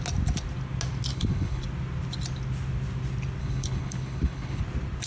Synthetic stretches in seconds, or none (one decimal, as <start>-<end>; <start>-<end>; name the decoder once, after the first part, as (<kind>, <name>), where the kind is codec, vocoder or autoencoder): 1.1-1.6 (codec, HILCodec); 3.4-4.6